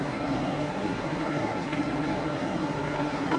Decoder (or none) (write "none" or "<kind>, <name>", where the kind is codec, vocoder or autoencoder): codec, SNAC